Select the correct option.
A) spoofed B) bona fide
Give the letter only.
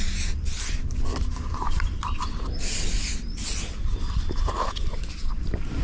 B